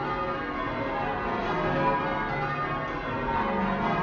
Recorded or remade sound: recorded